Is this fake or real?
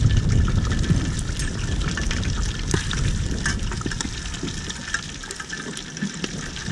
real